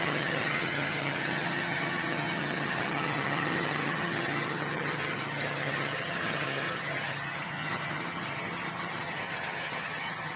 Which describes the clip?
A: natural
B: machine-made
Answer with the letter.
B